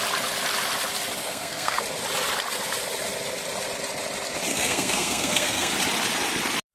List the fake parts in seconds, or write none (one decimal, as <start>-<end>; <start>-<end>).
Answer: 1.2-1.8; 4.5-5.7